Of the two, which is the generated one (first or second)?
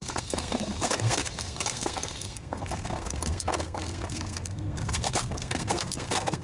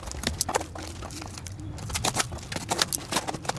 first